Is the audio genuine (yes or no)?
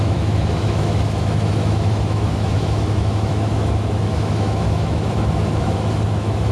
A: no